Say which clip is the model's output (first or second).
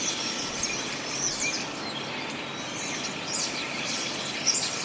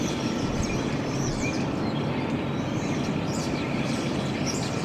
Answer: second